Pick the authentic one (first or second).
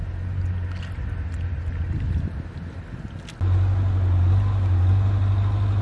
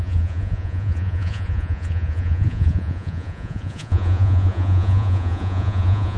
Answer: first